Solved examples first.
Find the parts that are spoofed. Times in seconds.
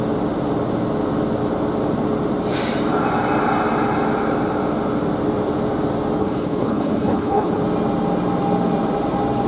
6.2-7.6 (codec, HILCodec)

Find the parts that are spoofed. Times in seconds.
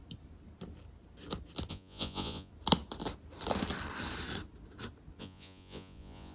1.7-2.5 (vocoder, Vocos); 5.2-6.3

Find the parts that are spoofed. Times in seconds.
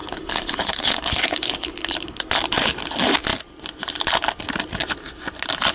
0.0-2.3 (codec, HILCodec)